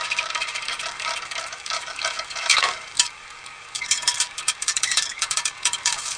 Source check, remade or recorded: remade